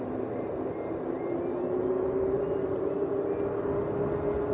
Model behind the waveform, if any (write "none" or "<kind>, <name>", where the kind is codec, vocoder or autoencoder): none